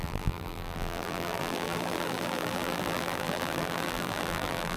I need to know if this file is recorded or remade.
remade